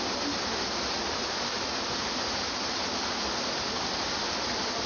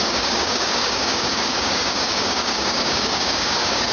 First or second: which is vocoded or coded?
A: second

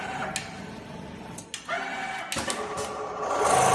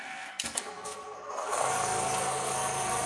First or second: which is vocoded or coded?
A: second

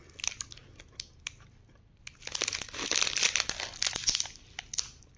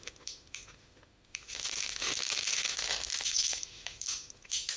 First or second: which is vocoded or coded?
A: second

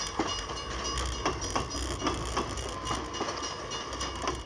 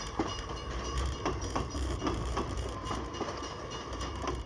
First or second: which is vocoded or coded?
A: second